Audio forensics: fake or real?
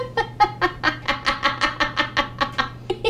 real